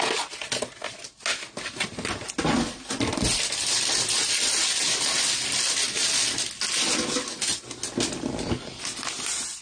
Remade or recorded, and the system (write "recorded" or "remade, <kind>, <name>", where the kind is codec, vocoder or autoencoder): recorded